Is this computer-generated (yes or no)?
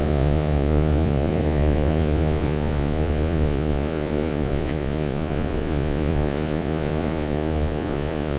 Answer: yes